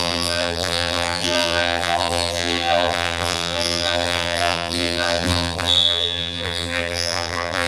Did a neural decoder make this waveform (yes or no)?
yes